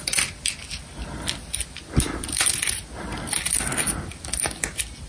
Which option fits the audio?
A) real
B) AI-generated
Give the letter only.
A